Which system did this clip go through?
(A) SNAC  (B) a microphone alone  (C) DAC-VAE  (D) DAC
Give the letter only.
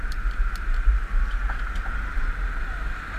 B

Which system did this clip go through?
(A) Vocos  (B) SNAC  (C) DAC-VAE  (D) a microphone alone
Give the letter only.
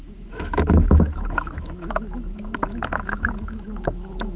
C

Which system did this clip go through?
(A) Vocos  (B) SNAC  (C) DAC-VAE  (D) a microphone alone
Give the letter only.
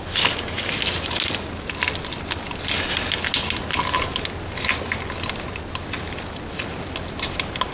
D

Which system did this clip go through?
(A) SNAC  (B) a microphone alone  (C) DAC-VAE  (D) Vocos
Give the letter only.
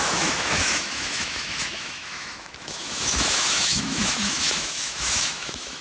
C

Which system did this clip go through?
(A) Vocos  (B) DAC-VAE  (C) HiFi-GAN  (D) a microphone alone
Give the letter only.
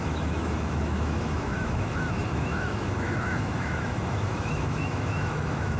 B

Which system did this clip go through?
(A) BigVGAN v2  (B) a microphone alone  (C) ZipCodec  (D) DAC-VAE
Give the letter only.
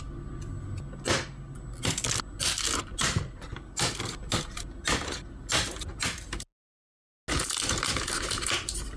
B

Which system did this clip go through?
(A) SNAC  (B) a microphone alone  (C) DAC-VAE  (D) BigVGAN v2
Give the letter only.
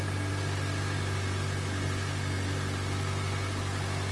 B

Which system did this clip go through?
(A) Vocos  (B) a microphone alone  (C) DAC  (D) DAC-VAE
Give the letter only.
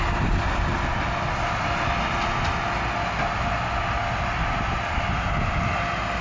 B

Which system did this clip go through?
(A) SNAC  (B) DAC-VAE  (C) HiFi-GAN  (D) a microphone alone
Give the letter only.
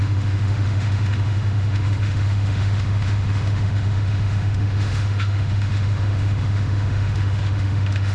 B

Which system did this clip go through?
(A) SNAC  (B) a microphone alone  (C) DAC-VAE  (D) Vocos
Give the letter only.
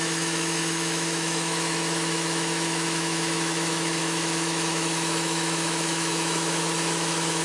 C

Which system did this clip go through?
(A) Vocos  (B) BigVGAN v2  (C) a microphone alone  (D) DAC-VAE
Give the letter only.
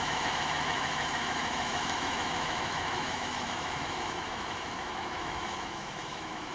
D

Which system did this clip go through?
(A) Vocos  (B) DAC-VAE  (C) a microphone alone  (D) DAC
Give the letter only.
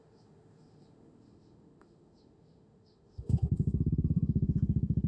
B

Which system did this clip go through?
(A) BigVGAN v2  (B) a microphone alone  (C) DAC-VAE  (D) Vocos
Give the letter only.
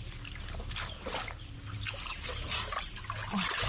B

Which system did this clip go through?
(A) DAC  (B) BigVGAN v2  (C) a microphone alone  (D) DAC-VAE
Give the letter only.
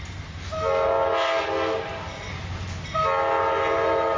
C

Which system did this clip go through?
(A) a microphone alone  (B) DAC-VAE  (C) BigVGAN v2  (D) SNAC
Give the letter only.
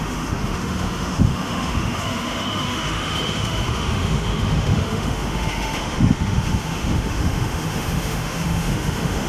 B